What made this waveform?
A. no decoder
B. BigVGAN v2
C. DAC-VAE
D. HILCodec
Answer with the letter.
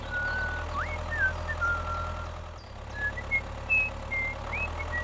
A